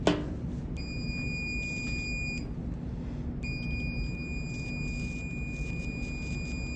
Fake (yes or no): no